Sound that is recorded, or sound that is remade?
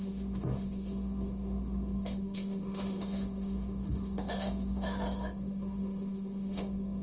remade